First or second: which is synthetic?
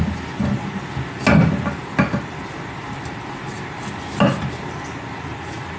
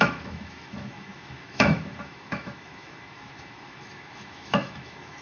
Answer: second